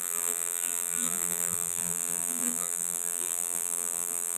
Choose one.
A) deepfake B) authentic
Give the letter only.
A